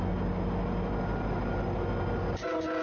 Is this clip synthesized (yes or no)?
no